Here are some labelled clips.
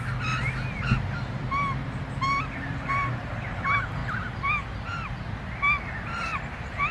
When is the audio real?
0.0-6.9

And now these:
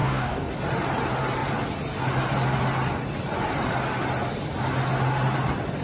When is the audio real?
0.5-5.8